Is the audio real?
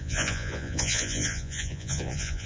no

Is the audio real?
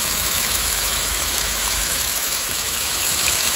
no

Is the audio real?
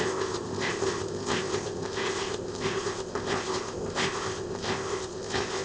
no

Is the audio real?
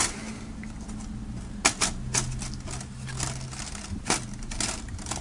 yes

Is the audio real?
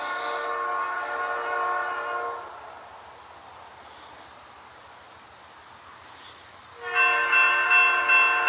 yes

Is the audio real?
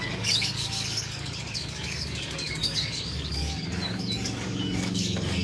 no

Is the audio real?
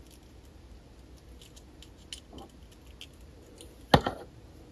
yes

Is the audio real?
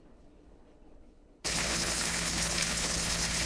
no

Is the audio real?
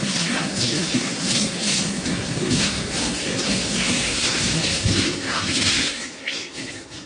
no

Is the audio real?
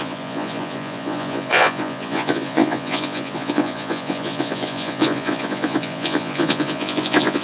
no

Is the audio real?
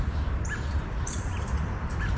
no